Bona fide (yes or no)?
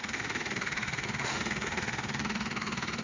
no